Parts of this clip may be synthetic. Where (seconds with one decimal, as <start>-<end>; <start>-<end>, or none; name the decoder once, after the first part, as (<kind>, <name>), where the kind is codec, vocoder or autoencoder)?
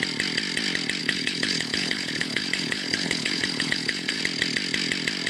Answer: 1.0-4.2 (codec, HILCodec)